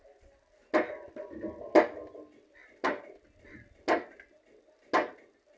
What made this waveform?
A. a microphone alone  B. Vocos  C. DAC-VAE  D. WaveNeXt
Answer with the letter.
A